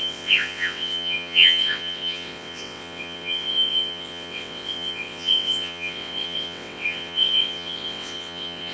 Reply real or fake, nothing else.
fake